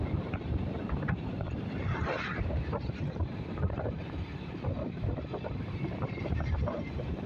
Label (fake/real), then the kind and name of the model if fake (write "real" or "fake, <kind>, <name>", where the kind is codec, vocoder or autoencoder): fake, vocoder, BigVGAN v2